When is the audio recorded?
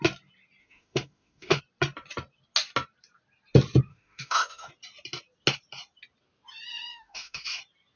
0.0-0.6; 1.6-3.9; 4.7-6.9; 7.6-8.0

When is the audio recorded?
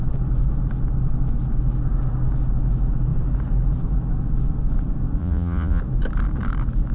0.0-5.2; 5.8-6.9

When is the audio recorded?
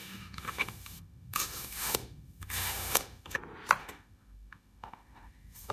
3.4-3.8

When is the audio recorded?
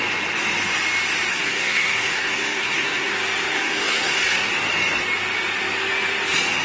0.0-1.3; 3.1-3.5; 4.5-6.6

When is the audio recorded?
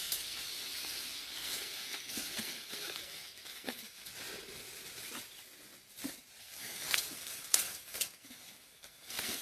4.1-6.4